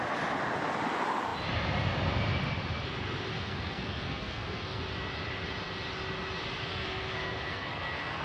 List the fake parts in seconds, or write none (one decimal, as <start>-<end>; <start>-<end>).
3.3-4.8; 6.7-8.2

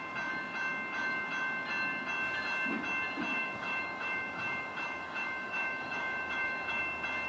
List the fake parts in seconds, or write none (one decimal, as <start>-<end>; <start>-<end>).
3.3-6.8